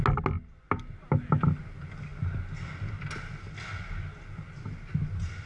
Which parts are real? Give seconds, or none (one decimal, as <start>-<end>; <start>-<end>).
0.0-5.5